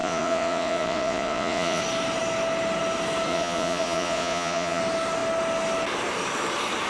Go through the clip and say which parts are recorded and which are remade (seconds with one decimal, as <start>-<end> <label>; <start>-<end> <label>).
0.0-1.8 remade; 1.8-3.3 recorded; 3.3-4.8 remade; 4.8-6.9 recorded